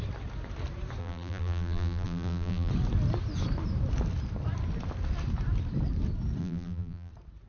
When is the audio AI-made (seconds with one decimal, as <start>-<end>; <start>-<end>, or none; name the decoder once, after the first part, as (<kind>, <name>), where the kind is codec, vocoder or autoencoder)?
1.0-2.7 (vocoder, BigVGAN v2); 6.4-7.1